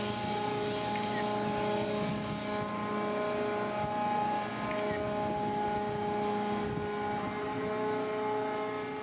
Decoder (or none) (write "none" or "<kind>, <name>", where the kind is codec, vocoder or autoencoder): none